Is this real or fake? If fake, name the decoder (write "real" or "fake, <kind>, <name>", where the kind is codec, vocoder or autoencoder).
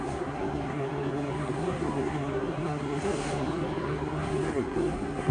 fake, codec, SNAC